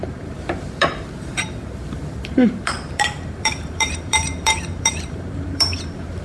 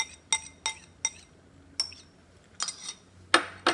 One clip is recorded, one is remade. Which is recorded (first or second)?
second